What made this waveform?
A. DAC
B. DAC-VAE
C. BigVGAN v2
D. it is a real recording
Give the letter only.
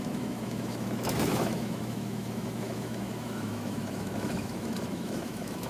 B